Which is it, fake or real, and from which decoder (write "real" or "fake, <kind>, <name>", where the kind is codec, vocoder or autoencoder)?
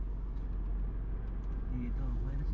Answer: real